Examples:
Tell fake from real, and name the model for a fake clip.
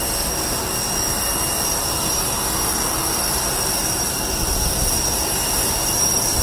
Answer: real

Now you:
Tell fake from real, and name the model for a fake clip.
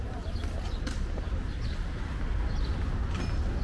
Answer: real